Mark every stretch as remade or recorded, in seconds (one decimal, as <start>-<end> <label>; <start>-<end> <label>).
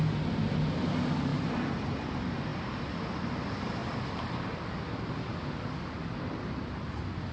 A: 0.0-7.3 recorded